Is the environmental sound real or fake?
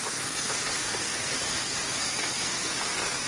fake